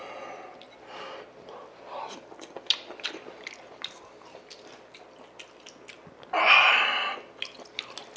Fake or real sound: real